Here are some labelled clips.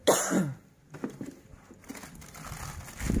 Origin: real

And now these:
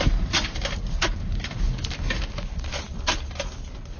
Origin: real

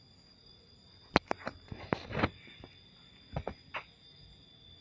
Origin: real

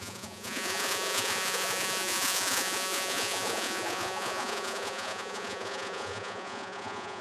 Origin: fake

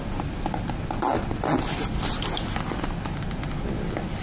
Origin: real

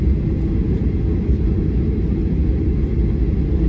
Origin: real